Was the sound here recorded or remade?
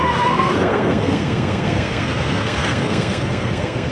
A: remade